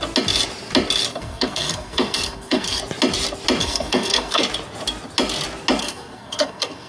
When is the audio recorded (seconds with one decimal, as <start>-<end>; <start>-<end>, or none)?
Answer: 0.0-1.1; 2.8-3.6; 4.4-5.8